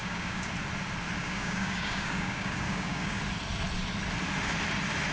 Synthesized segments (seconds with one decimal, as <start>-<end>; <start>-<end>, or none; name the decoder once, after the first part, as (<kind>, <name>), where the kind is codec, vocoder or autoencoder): 0.0-0.5 (codec, DAC); 1.2-3.2